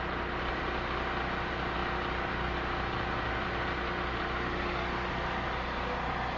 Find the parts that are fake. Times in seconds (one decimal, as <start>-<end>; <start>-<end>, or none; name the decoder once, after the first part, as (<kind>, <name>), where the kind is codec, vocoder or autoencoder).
none